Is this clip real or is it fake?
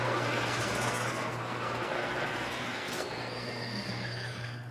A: fake